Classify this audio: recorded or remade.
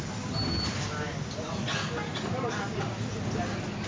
recorded